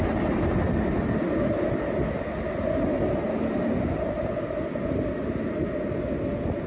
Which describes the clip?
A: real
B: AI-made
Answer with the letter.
A